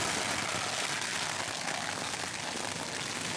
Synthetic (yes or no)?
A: no